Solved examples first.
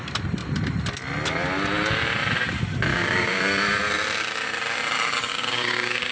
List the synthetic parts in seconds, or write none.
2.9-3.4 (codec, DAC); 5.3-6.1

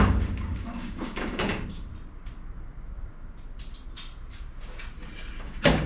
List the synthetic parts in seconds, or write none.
0.0-1.9 (codec, DAC); 5.4-5.9